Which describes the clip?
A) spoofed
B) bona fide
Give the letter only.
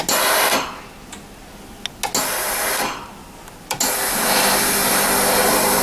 B